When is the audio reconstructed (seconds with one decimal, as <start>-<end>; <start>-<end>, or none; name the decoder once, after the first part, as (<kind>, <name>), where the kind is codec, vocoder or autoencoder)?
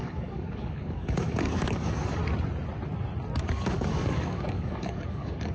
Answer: 0.0-2.2 (codec, DAC); 3.4-5.5